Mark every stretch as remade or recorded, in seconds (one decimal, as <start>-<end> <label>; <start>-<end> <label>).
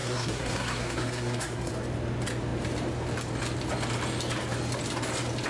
0.0-1.7 remade; 1.7-5.5 recorded